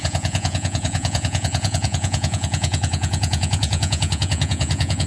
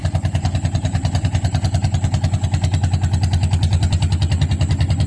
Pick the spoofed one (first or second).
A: first